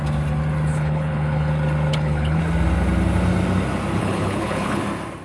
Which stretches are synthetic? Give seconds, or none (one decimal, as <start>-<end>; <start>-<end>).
0.7-1.5; 1.9-2.4; 4.0-4.8